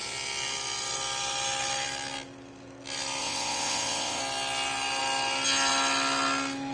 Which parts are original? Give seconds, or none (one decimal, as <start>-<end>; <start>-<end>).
0.0-3.2; 4.2-6.7